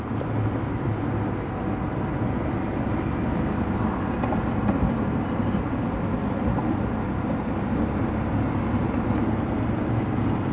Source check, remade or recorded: recorded